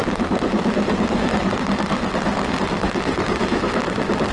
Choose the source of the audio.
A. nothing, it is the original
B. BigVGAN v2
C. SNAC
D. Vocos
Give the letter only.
A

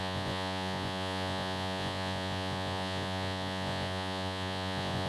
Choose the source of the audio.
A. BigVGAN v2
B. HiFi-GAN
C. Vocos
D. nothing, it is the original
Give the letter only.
C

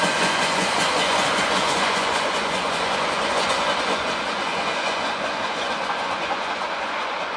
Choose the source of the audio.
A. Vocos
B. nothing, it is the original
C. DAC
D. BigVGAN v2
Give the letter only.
A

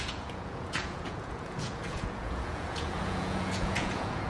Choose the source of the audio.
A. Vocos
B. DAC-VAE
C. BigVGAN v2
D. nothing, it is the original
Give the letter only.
A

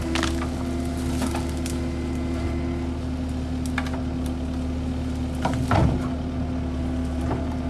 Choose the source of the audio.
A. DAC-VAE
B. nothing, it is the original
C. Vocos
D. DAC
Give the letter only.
B